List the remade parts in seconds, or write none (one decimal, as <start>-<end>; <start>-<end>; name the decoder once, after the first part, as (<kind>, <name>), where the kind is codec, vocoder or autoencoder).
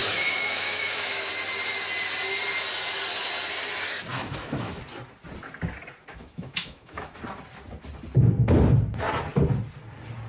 0.0-1.3 (autoencoder, DAC-VAE); 4.1-4.8; 6.1-7.2